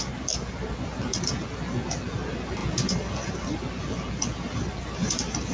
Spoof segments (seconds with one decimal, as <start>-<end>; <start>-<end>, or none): none

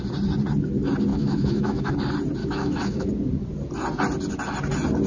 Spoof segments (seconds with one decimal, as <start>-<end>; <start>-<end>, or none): 1.1-1.9; 2.4-3.1

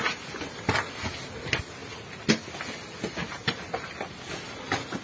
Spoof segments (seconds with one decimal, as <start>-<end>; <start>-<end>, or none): none

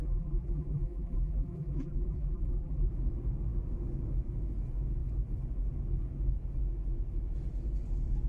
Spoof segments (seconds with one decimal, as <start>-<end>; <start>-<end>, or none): 0.0-2.9